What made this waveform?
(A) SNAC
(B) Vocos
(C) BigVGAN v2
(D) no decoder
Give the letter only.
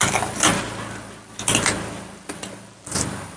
D